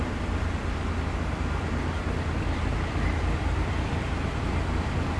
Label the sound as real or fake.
fake